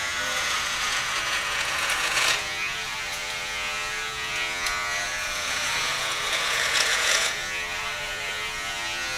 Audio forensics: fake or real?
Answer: fake